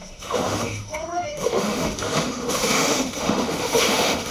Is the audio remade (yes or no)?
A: yes